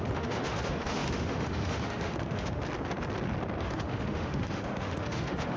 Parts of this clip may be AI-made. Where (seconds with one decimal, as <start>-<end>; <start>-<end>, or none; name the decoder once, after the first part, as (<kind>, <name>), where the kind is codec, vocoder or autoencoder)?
0.0-2.6 (autoencoder, DAC-VAE); 3.6-5.6

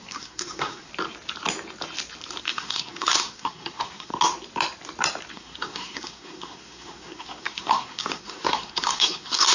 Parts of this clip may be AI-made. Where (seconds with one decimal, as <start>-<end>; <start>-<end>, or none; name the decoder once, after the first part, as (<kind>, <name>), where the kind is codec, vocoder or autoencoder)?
0.0-0.9 (codec, SNAC); 2.4-4.1; 5.3-9.5

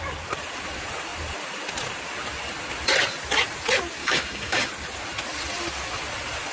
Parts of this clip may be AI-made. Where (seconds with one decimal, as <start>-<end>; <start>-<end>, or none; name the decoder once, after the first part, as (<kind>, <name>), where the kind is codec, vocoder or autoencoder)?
4.0-4.7 (codec, DAC)